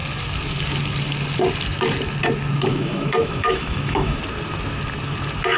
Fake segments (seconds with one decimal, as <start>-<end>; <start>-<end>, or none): 2.7-4.2